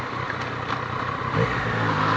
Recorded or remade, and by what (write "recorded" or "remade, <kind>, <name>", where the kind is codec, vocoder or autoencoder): recorded